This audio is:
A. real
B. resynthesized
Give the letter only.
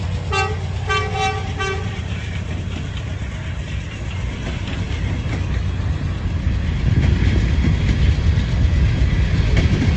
A